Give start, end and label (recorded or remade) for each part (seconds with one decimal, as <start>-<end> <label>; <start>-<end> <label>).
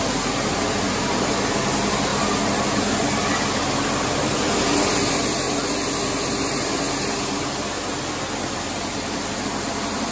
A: 0.0-10.1 recorded